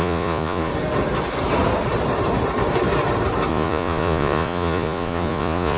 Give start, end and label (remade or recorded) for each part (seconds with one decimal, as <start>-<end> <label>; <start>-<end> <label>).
0.0-0.7 remade; 0.7-3.5 recorded; 3.5-5.8 remade